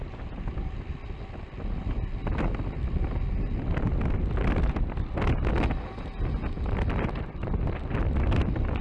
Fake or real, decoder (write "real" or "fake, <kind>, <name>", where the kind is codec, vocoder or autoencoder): real